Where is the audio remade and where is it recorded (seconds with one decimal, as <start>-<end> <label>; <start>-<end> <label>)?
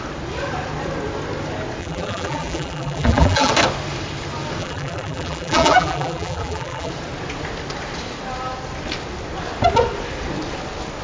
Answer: 0.0-1.8 recorded; 1.8-3.5 remade; 3.5-4.6 recorded; 4.6-6.9 remade; 6.9-11.0 recorded